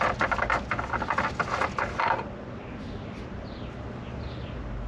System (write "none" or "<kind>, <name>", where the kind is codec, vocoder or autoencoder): none